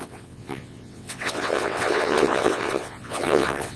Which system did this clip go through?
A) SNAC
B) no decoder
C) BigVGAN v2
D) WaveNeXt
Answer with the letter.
D